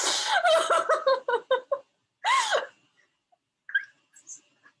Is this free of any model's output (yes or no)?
yes